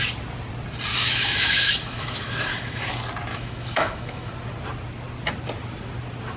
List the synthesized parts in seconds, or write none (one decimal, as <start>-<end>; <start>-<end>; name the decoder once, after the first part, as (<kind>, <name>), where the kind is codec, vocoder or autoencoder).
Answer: 0.9-2.9 (autoencoder, DAC-VAE); 3.3-4.3